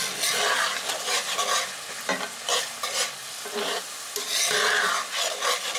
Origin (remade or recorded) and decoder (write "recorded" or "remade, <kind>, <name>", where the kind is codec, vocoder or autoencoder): recorded